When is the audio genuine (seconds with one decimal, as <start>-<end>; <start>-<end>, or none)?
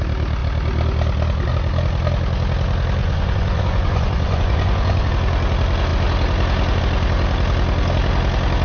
0.0-3.0; 5.1-8.6